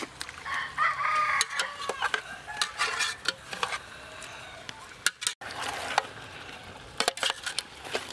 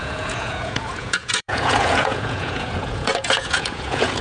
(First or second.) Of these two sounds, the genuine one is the first